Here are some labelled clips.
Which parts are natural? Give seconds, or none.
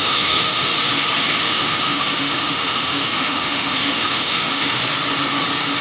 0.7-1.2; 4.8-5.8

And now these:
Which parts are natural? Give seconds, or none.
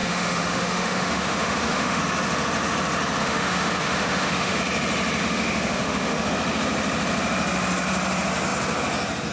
2.0-3.2; 4.6-5.2; 6.3-9.3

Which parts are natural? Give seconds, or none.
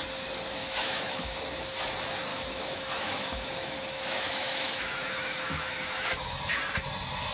0.0-0.6; 1.4-2.3; 6.4-7.3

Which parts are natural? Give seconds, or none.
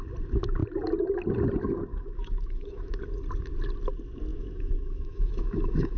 0.0-1.9; 3.0-4.3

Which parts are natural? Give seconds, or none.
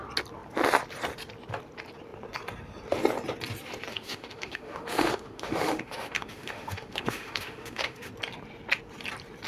0.0-3.9; 8.1-9.5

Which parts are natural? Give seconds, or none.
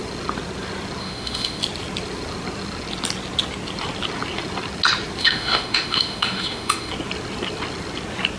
0.0-1.0; 1.6-5.2; 6.9-8.4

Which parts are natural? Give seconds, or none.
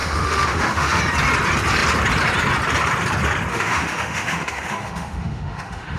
1.0-3.5